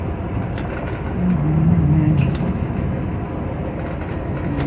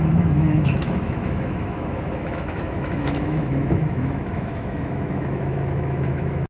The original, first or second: first